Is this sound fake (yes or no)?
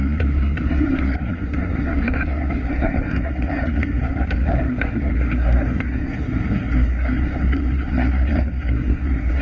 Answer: yes